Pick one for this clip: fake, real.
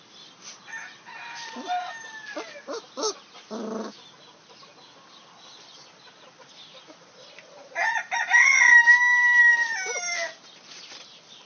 real